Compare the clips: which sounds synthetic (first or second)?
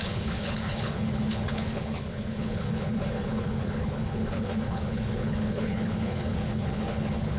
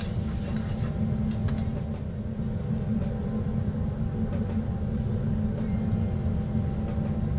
first